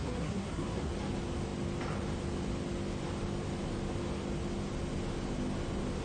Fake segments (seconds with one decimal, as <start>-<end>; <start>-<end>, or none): 0.0-0.9